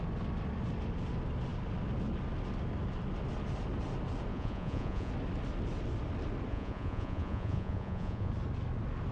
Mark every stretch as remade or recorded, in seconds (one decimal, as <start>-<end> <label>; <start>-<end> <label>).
0.0-4.3 recorded; 4.3-5.1 remade; 5.1-6.5 recorded; 6.5-8.3 remade; 8.3-9.1 recorded